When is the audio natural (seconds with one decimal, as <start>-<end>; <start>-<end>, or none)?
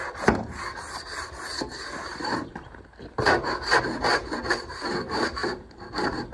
none